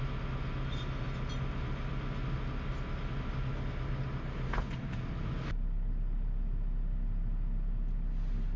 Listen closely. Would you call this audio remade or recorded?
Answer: recorded